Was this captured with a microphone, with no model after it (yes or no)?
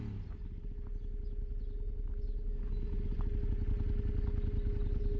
yes